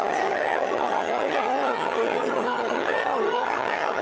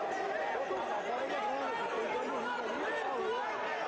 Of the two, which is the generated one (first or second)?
first